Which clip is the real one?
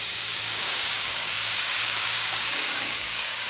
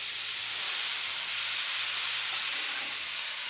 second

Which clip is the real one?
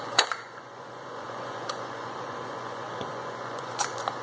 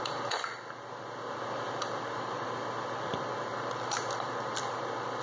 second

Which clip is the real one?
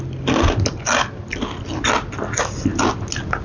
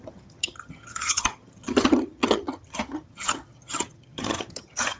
first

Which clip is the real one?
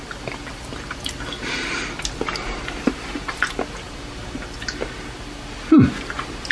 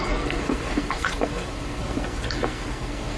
first